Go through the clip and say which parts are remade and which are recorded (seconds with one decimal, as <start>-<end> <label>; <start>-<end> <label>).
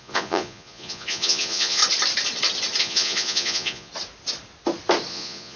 0.0-1.8 remade; 1.8-2.8 recorded; 2.8-3.9 remade; 3.9-5.1 recorded; 5.1-5.6 remade